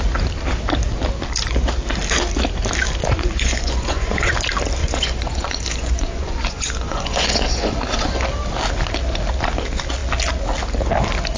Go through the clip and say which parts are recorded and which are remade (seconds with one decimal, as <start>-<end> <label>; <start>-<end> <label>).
0.0-3.0 recorded; 3.0-4.3 remade; 4.3-4.8 recorded; 4.8-7.7 remade; 7.7-11.4 recorded